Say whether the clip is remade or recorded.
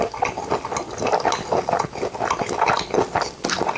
recorded